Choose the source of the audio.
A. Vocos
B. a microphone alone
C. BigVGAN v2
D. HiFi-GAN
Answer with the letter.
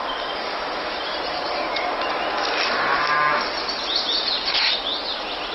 B